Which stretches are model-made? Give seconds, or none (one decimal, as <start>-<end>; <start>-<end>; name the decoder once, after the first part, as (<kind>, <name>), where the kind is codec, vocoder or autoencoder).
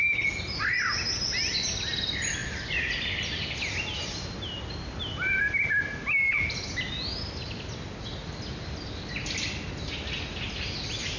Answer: none